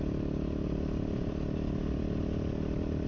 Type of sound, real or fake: real